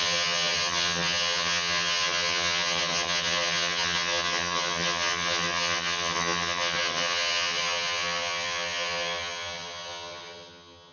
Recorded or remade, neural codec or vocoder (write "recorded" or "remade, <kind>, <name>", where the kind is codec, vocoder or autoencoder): remade, vocoder, HiFi-GAN